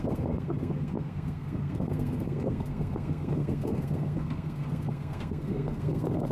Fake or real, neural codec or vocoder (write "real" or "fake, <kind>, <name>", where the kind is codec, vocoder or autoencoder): fake, codec, SNAC